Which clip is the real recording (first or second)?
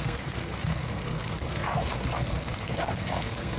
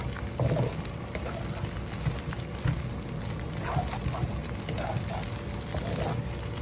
second